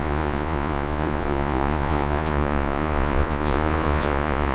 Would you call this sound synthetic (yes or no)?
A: yes